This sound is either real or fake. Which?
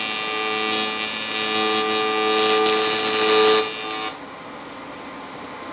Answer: real